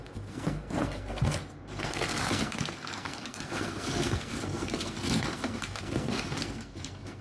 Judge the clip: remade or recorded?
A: remade